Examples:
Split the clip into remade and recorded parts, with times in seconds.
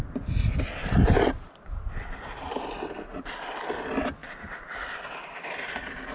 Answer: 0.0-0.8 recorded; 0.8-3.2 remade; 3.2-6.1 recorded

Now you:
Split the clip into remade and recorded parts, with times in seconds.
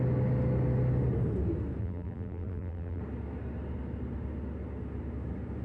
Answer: 0.0-1.8 recorded; 1.8-3.0 remade; 3.0-5.6 recorded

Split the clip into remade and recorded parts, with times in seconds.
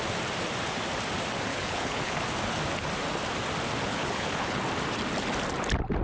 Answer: 0.0-1.5 recorded; 1.5-2.2 remade; 2.2-3.9 recorded; 3.9-4.6 remade; 4.6-6.0 recorded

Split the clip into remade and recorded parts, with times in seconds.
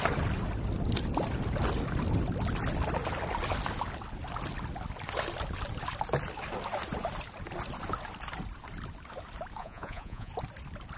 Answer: 0.0-9.6 recorded; 9.6-10.3 remade; 10.3-11.0 recorded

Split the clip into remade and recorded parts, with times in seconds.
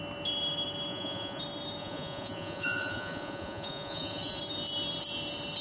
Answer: 0.0-0.9 recorded; 0.9-1.4 remade; 1.4-1.8 recorded; 1.8-4.4 remade; 4.4-5.6 recorded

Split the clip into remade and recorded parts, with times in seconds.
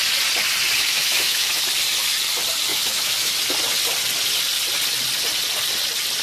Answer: 0.0-0.8 recorded; 0.8-1.6 remade; 1.6-2.7 recorded; 2.7-3.3 remade; 3.3-6.2 recorded